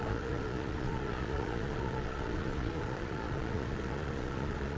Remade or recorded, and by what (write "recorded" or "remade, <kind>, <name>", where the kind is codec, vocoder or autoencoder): remade, vocoder, Vocos